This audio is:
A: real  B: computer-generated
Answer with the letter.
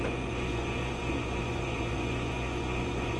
B